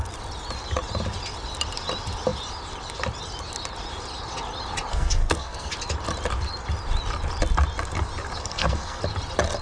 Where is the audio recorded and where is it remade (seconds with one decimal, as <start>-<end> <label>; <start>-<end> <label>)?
0.0-4.9 recorded; 4.9-5.7 remade; 5.7-8.4 recorded; 8.4-9.0 remade; 9.0-9.6 recorded